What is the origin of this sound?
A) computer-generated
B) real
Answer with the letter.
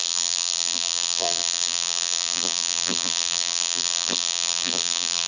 A